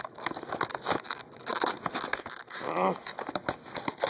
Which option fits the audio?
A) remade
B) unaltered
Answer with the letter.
A